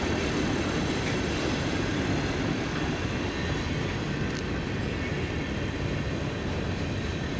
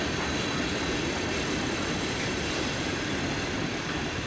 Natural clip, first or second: first